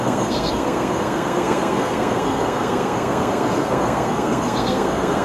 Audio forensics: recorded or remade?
remade